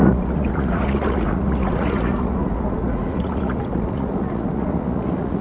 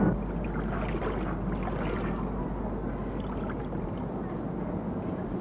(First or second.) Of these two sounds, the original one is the second